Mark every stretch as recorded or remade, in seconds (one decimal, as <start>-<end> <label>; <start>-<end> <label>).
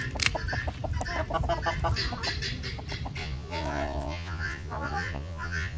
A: 0.0-3.2 recorded; 3.2-5.8 remade